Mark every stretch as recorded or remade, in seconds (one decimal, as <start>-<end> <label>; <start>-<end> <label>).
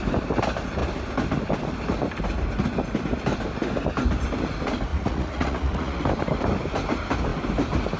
0.0-4.9 recorded; 4.9-6.0 remade; 6.0-8.0 recorded